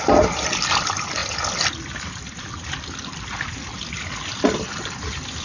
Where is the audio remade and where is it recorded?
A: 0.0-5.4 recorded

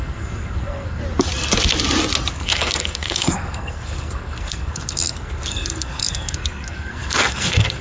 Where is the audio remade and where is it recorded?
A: 0.0-1.0 remade; 1.0-2.3 recorded; 2.3-7.8 remade

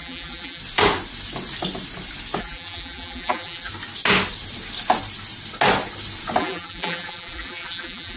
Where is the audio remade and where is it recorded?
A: 0.0-0.6 remade; 0.6-2.4 recorded; 2.4-3.7 remade; 3.7-6.4 recorded; 6.4-8.2 remade

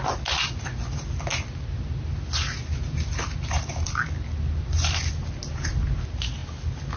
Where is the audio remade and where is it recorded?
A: 0.0-7.0 recorded